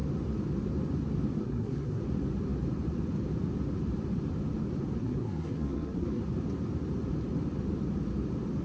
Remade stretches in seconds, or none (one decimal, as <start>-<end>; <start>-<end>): 1.4-2.0; 5.0-6.2